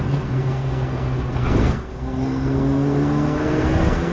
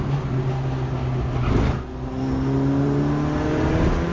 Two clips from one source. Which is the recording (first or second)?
second